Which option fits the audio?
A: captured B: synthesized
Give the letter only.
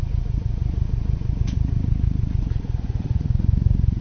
B